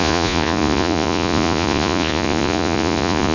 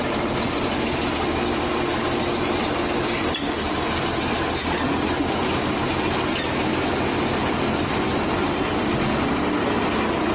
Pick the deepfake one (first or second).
first